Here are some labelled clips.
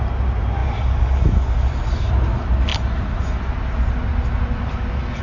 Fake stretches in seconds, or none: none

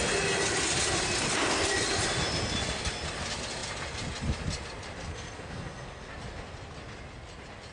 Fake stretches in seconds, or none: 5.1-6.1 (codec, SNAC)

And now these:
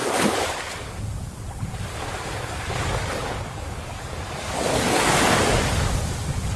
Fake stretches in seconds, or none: 0.0-1.0 (codec, DAC); 1.9-5.9

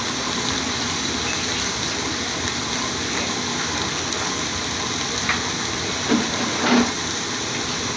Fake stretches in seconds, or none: none

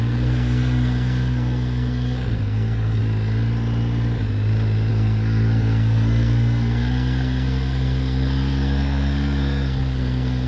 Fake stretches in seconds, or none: 0.0-3.0 (codec, SNAC); 4.9-10.5

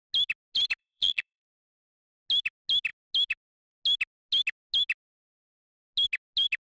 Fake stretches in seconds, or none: 0.8-1.8 (vocoder, BigVGAN v2)